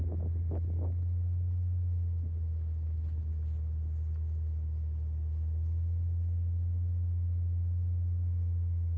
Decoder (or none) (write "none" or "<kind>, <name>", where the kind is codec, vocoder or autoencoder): none